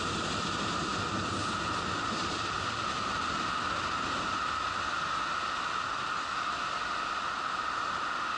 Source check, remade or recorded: recorded